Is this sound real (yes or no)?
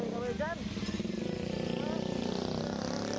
yes